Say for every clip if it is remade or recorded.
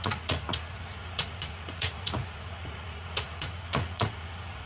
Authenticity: remade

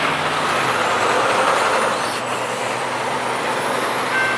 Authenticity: recorded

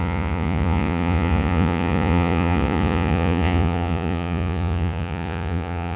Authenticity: remade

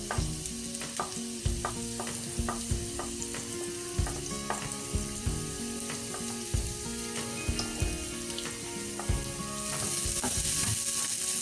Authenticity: recorded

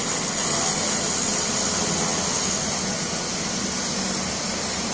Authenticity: recorded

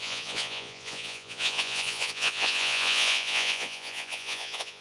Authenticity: remade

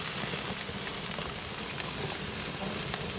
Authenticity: recorded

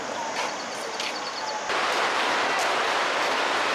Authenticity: recorded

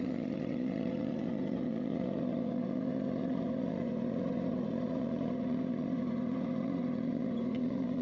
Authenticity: remade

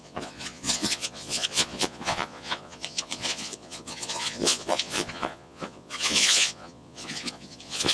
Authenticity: remade